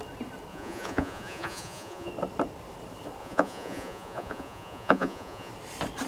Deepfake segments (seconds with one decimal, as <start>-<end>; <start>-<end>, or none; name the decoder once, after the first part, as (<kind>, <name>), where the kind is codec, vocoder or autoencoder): 0.5-2.1 (vocoder, Vocos); 3.2-5.5